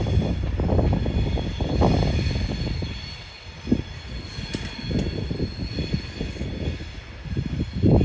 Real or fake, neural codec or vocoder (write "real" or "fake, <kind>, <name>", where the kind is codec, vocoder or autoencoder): real